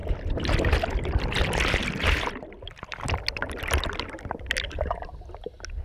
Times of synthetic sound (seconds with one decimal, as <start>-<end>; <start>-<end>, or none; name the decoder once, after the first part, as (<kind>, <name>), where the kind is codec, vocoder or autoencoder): none